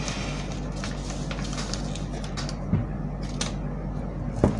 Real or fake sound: real